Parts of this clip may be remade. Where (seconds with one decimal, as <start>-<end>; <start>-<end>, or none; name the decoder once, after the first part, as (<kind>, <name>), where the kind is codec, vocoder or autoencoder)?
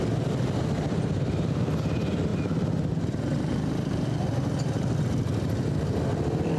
none